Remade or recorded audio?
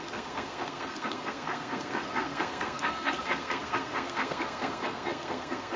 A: remade